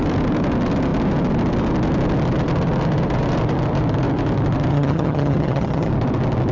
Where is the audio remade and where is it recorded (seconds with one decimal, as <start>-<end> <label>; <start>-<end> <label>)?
0.0-4.7 recorded; 4.7-5.9 remade; 5.9-6.5 recorded